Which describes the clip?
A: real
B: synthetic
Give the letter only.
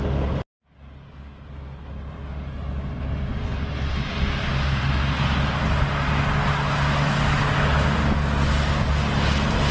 A